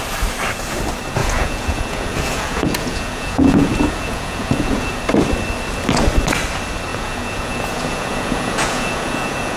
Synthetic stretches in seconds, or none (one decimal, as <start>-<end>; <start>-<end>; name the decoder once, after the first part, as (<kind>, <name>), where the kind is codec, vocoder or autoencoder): 1.2-5.0 (vocoder, Vocos); 6.9-9.6